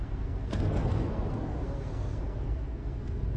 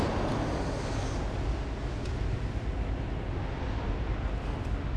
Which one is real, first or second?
second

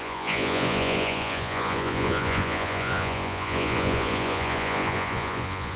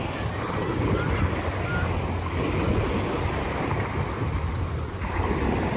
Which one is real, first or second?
second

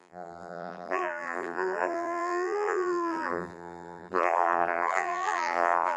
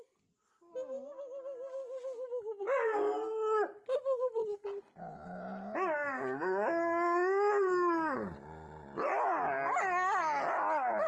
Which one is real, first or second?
second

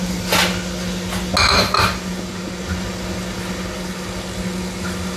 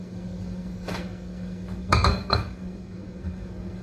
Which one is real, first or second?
first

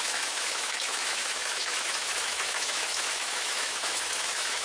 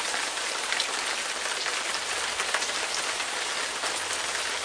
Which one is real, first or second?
second